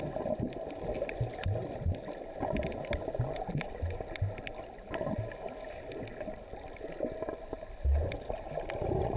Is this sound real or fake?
real